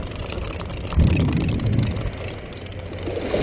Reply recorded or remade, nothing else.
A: remade